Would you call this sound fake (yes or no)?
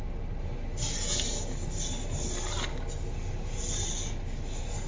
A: no